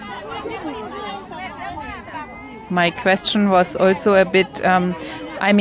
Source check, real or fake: real